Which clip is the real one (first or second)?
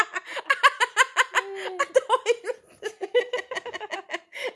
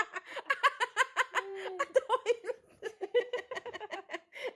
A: first